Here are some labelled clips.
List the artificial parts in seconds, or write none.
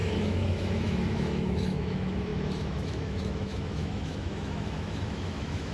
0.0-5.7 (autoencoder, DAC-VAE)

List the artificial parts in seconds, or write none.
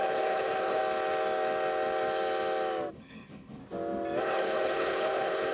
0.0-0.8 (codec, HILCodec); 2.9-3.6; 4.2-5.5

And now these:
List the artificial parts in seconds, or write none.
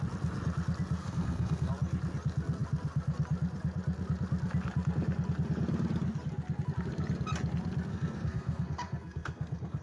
1.0-1.7 (codec, SNAC); 7.9-9.8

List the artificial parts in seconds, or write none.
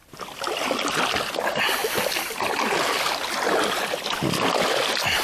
none